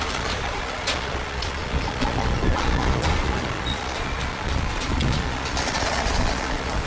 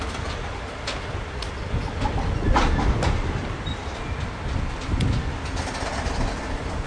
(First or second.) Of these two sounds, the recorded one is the second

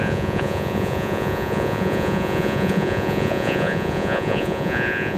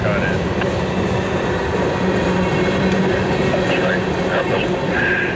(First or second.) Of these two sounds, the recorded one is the second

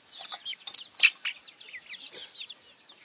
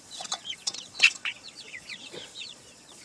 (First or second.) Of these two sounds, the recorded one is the first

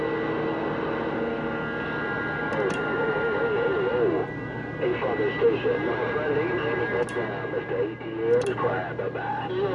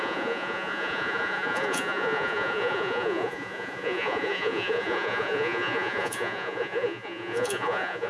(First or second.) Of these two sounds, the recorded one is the first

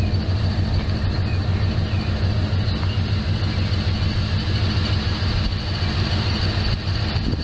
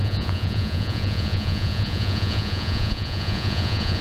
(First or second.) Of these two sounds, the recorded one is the first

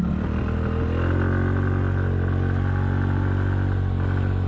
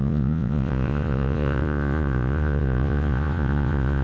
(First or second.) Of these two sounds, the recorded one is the first